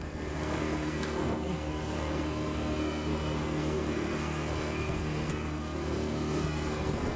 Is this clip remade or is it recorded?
remade